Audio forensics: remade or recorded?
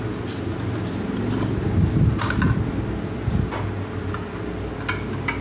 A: recorded